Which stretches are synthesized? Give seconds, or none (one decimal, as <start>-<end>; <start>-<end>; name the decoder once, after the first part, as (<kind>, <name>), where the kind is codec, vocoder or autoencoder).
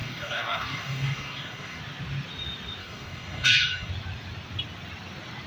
0.0-1.8 (codec, DAC); 2.8-3.9